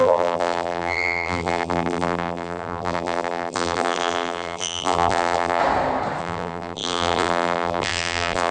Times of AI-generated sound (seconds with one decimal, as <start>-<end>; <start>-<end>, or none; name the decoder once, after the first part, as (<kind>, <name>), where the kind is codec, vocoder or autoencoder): 0.0-5.6 (vocoder, BigVGAN v2); 6.2-8.5